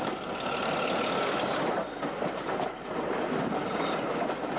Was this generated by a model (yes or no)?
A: no